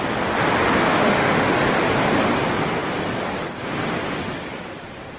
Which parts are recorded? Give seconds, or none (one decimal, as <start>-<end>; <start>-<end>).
0.0-0.9; 1.4-5.2